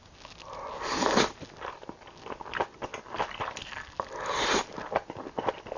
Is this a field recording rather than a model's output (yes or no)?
yes